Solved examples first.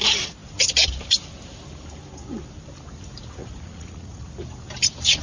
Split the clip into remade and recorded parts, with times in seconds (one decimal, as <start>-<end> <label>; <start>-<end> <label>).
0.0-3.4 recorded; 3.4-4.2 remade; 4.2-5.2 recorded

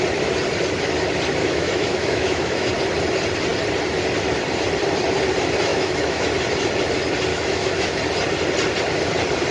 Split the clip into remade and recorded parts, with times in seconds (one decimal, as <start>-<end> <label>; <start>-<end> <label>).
0.0-1.4 recorded; 1.4-2.7 remade; 2.7-5.7 recorded; 5.7-6.3 remade; 6.3-7.3 recorded; 7.3-8.0 remade; 8.0-9.5 recorded

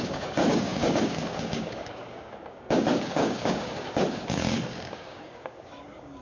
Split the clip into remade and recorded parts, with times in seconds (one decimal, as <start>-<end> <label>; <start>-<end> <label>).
0.0-6.2 remade